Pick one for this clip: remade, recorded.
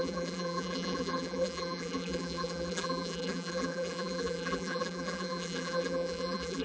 remade